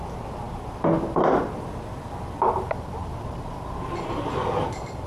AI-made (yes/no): no